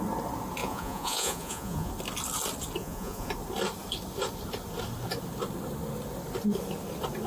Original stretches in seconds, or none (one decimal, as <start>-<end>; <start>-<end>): 0.0-0.6; 1.9-2.8; 3.3-7.3